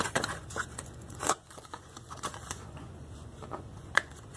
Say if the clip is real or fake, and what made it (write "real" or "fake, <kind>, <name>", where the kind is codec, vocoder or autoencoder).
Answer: fake, vocoder, Vocos